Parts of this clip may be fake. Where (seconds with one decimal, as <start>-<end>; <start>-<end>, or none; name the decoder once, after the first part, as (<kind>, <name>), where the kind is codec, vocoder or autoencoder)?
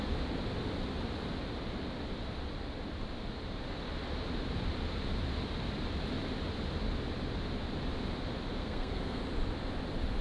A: 8.6-9.2 (codec, SNAC)